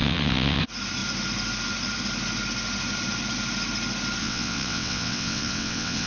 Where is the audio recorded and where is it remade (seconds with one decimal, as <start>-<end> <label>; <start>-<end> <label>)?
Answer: 0.0-0.6 remade; 0.6-4.2 recorded; 4.2-6.1 remade